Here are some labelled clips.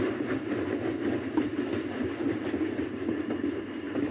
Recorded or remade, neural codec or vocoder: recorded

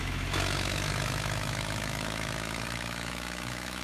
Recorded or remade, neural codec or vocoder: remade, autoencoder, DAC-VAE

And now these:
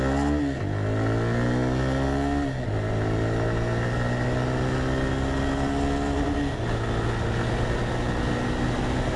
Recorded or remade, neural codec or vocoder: recorded